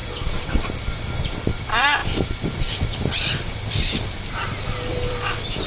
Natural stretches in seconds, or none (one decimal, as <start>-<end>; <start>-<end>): none